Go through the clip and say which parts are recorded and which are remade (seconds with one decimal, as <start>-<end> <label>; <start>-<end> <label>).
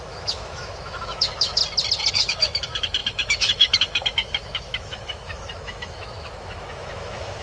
0.0-1.6 remade; 1.6-2.1 recorded; 2.1-7.4 remade